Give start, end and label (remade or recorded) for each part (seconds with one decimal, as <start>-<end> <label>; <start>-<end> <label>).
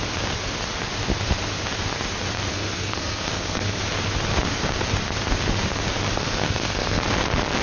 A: 0.0-2.5 recorded; 2.5-3.8 remade; 3.8-6.1 recorded; 6.1-7.0 remade; 7.0-7.6 recorded